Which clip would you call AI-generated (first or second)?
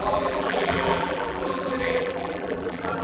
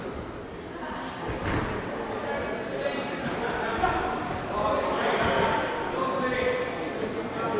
first